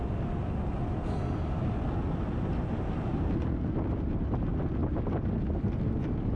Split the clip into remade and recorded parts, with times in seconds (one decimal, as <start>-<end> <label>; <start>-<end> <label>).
0.0-6.4 recorded